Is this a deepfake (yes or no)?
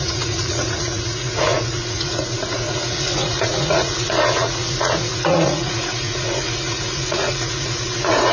yes